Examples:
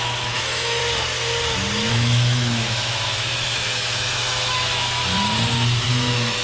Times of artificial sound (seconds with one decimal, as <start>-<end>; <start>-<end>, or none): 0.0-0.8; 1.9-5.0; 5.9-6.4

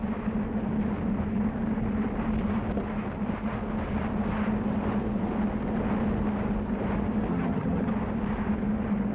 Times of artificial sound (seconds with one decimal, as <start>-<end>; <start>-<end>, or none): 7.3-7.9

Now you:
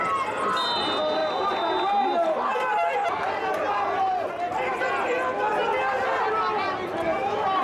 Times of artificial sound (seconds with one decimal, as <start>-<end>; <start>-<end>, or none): none